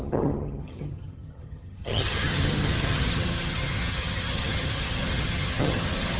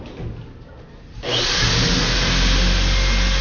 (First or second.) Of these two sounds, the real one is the second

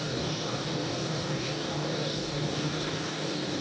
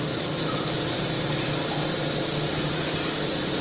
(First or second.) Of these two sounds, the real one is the second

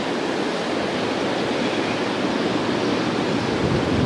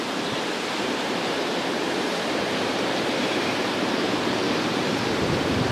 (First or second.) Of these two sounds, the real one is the first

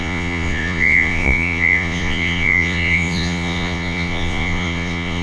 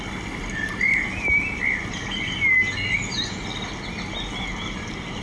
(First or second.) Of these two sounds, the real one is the second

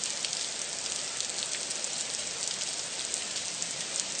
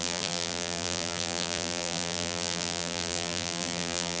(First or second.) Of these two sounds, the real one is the first